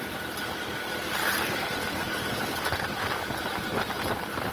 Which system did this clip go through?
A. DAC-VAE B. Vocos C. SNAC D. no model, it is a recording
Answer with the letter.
D